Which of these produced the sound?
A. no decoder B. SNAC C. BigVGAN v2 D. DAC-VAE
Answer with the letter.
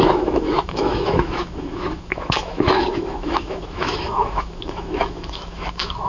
D